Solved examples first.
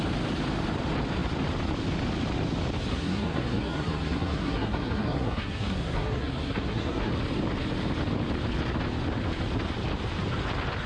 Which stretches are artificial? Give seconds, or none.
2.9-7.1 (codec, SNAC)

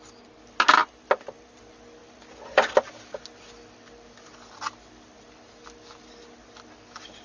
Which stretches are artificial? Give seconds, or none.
0.8-1.6 (vocoder, BigVGAN v2); 2.0-3.0

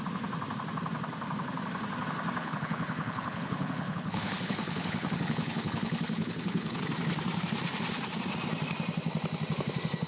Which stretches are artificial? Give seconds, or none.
2.4-6.8 (codec, HILCodec)

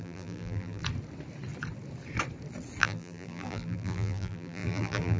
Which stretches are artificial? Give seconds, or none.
0.0-0.8 (vocoder, BigVGAN v2); 2.8-5.2

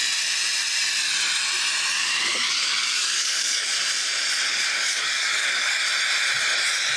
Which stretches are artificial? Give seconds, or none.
2.0-3.7 (codec, DAC); 4.5-5.8

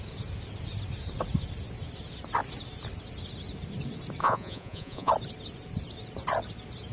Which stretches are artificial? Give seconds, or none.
4.2-5.1 (vocoder, Vocos)

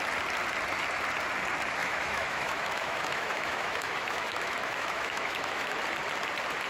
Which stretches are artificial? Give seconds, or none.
1.8-5.8 (autoencoder, DAC-VAE)

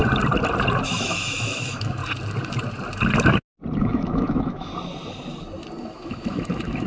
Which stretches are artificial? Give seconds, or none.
0.9-2.0 (autoencoder, DAC-VAE); 3.8-4.7; 5.8-6.9